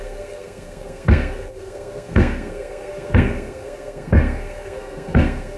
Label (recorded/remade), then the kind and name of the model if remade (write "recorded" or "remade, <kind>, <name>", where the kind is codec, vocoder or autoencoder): remade, codec, SNAC